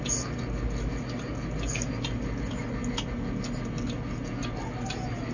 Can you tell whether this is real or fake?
real